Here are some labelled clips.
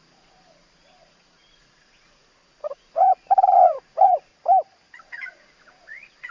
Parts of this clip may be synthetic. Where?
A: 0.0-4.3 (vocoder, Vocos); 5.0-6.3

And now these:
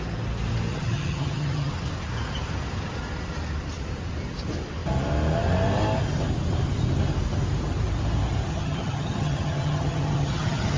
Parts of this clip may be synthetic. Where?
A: 0.7-1.7 (vocoder, HiFi-GAN); 8.5-10.8

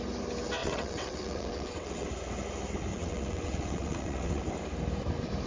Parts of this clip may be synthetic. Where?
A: 0.6-2.1 (vocoder, WaveNeXt); 2.9-4.4

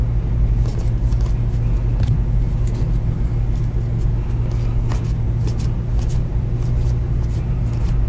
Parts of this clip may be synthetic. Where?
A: 6.1-8.1 (vocoder, BigVGAN v2)